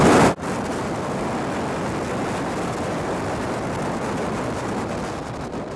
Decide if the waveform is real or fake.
real